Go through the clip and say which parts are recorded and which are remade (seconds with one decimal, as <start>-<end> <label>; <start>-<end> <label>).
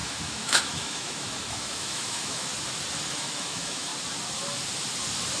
0.0-2.5 remade; 2.5-3.1 recorded; 3.1-3.9 remade; 3.9-5.4 recorded